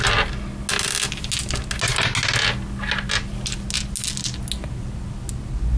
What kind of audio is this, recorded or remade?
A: recorded